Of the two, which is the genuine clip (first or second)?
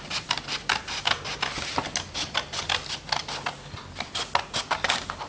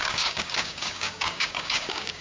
first